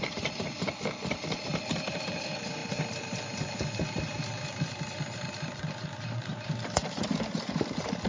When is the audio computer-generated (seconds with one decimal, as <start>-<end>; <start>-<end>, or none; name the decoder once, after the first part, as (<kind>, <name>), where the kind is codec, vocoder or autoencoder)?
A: 0.0-8.1 (vocoder, BigVGAN v2)